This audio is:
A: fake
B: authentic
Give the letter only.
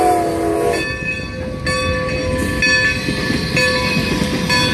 B